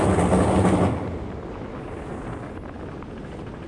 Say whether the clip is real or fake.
real